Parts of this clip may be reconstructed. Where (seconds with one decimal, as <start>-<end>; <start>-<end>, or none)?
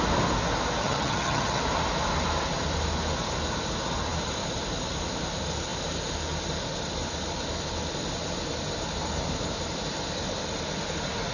0.8-1.6